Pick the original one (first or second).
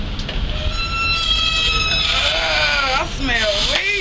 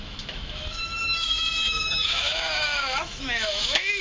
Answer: first